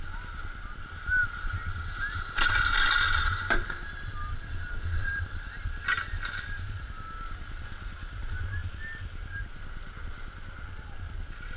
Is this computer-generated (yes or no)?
no